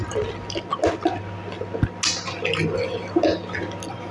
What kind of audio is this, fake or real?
real